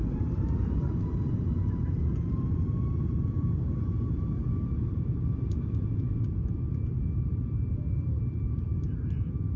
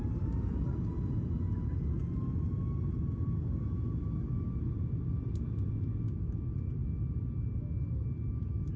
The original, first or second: second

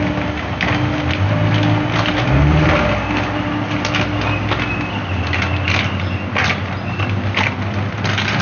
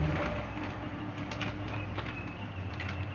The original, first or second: first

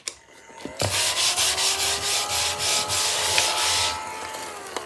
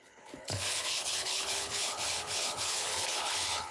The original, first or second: first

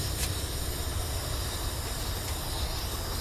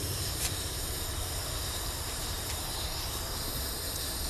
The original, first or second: first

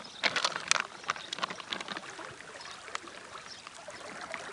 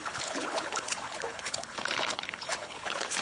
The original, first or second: first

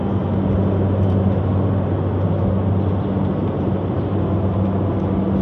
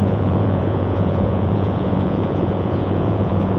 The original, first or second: first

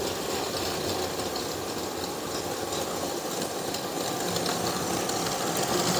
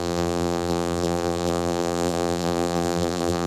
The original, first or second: first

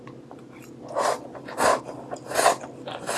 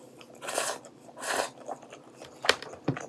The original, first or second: first